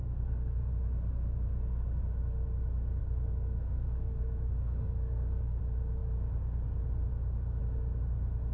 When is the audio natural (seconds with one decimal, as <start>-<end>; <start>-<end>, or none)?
0.7-3.0; 5.6-8.5